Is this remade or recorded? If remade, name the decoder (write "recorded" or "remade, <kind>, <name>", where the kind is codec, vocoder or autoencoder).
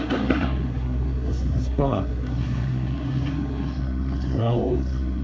remade, codec, SNAC